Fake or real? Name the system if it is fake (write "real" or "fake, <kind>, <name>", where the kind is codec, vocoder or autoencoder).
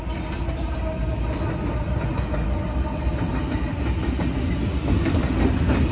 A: real